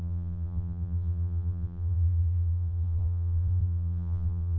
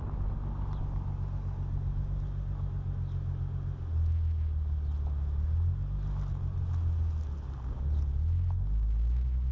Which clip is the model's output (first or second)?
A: first